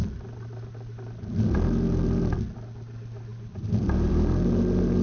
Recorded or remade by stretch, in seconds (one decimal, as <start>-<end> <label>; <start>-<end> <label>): 0.0-3.3 recorded; 3.3-4.1 remade; 4.1-5.0 recorded